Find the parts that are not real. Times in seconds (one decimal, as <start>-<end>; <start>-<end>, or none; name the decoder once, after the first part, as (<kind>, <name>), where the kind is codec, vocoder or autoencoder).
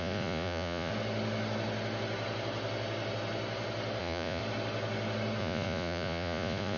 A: 0.0-0.9 (vocoder, Vocos); 4.0-4.4; 5.4-6.8